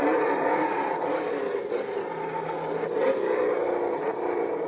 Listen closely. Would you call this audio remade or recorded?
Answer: recorded